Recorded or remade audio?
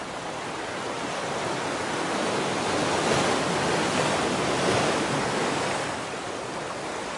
recorded